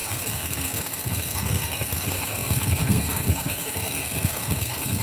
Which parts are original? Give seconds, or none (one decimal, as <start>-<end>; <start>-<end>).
none